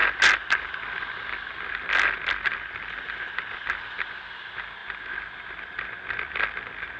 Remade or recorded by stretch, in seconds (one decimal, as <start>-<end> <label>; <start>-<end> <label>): 0.0-7.0 recorded